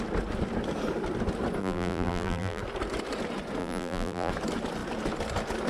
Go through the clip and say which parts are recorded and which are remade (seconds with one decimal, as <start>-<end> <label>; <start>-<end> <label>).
0.0-1.6 recorded; 1.6-2.6 remade; 2.6-3.6 recorded; 3.6-4.3 remade; 4.3-5.7 recorded